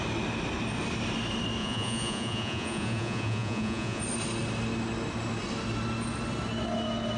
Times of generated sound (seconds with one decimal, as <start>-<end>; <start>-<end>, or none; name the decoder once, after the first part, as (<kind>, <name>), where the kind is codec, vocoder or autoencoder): 1.6-4.0 (vocoder, Vocos)